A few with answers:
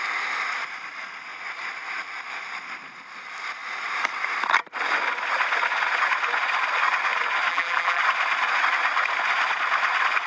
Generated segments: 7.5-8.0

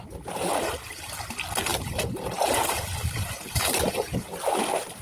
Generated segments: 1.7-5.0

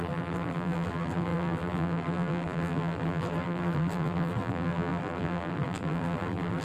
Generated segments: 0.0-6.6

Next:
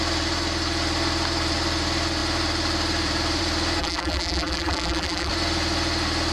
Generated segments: 3.8-5.3